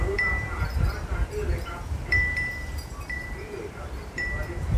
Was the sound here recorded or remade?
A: remade